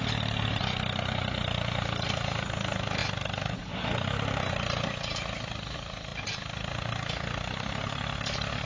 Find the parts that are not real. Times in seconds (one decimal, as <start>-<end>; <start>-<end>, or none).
3.0-3.7; 6.1-8.7